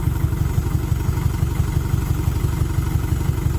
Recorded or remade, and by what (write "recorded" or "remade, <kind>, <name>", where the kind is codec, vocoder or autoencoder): recorded